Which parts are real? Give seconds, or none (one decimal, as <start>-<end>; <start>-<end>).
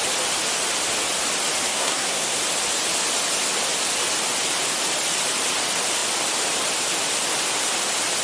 0.0-1.7; 2.4-8.2